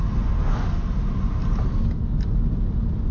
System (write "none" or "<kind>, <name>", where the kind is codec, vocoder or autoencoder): none